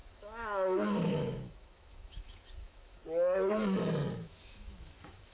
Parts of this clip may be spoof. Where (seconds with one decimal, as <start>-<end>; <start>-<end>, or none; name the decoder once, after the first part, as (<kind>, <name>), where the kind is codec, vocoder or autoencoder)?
0.0-3.0 (autoencoder, DAC-VAE); 4.1-5.3